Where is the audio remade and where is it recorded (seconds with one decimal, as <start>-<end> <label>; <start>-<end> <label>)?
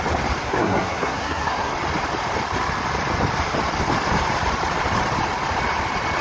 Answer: 0.0-0.4 recorded; 0.4-1.7 remade; 1.7-6.2 recorded